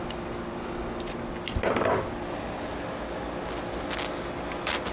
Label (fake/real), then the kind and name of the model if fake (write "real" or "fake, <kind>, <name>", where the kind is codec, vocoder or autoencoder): real